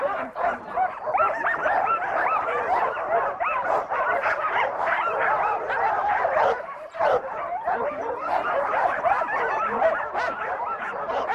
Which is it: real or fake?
fake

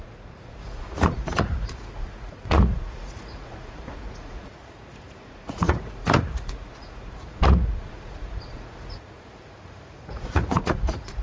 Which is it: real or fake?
fake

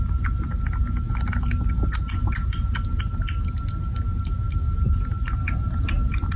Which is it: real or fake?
real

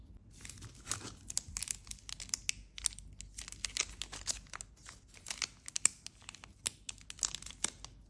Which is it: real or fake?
real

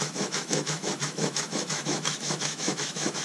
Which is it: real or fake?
fake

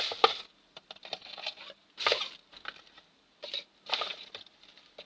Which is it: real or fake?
fake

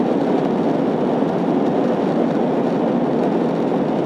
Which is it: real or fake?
real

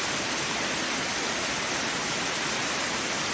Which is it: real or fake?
real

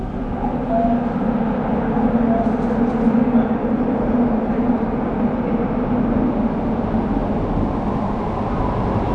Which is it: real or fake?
real